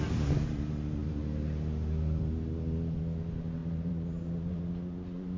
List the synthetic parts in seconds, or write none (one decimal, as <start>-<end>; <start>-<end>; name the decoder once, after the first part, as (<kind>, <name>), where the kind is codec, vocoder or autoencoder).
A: 3.6-4.6 (vocoder, BigVGAN v2)